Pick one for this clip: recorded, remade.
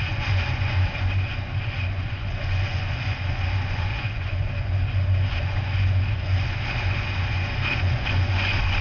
remade